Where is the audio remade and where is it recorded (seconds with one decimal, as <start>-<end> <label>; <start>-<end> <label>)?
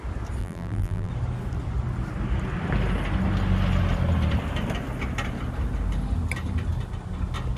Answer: 0.0-0.4 recorded; 0.4-1.1 remade; 1.1-7.6 recorded